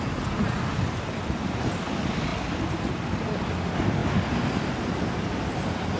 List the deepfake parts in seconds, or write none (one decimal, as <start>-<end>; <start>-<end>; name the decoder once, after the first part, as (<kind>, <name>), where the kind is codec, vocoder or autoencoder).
none